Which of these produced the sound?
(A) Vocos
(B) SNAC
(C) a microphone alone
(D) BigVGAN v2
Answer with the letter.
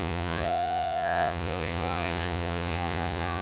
A